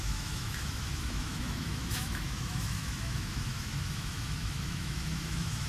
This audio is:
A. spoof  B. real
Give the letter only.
A